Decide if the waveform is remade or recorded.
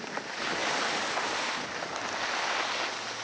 recorded